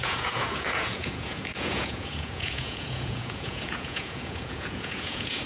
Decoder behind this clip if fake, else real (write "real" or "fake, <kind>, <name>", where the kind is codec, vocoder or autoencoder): fake, vocoder, Vocos